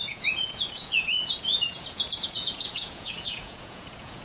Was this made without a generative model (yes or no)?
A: no